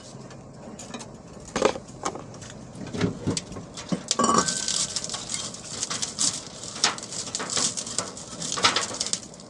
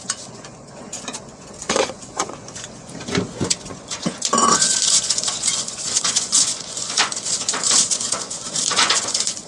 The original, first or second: first